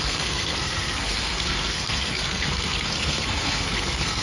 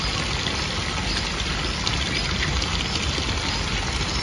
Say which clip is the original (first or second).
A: second